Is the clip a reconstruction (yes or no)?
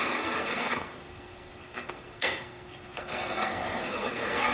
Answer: yes